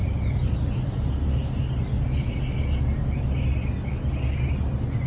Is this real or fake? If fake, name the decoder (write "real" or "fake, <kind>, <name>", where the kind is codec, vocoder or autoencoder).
real